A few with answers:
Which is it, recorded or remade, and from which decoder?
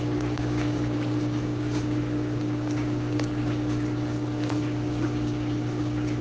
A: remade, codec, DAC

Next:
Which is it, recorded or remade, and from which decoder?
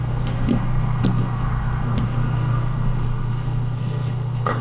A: remade, codec, SNAC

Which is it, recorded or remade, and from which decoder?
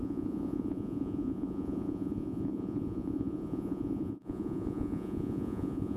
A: remade, vocoder, Vocos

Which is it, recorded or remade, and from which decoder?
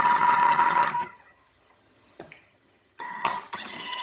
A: remade, vocoder, HiFi-GAN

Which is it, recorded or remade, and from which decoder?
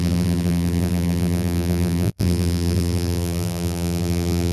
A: remade, vocoder, BigVGAN v2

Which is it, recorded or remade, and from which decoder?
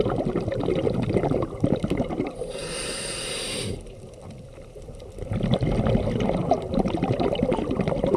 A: recorded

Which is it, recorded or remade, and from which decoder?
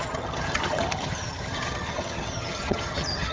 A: remade, vocoder, HiFi-GAN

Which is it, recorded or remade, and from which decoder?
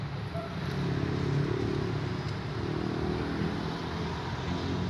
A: recorded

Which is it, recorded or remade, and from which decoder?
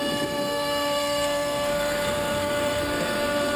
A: remade, codec, SNAC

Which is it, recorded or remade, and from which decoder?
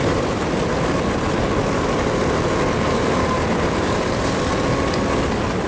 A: recorded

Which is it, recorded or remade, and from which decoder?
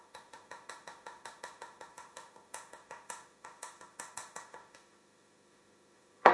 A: remade, autoencoder, DAC-VAE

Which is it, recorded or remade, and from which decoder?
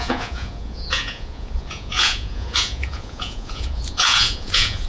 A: remade, vocoder, Vocos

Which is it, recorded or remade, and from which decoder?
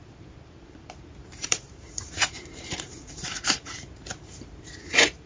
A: remade, vocoder, BigVGAN v2